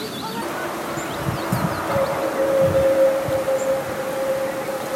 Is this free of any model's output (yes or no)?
yes